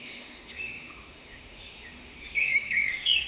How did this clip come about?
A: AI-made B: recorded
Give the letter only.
A